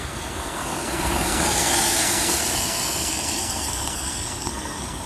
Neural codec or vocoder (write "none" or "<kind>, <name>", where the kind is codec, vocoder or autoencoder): codec, SNAC